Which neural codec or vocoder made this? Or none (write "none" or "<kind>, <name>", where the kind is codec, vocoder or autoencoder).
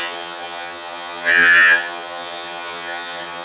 vocoder, HiFi-GAN